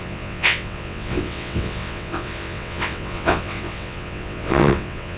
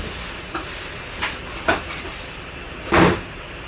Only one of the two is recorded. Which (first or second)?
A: second